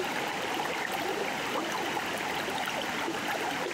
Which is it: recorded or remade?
recorded